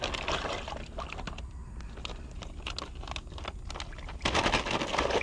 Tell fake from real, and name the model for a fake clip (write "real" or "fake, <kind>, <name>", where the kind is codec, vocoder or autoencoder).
real